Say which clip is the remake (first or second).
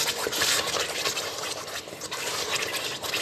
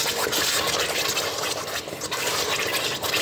first